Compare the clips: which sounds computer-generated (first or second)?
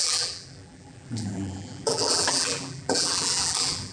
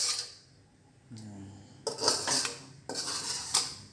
first